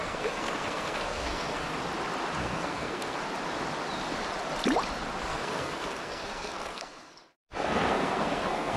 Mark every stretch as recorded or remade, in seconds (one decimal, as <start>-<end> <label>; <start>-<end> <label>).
0.0-1.8 remade; 1.8-2.4 recorded; 2.4-3.2 remade; 3.2-5.3 recorded; 5.3-8.8 remade